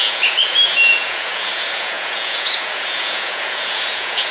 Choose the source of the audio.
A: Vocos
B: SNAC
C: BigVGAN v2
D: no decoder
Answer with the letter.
A